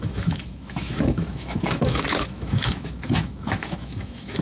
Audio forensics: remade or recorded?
remade